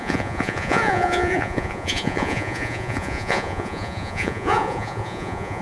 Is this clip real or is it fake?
fake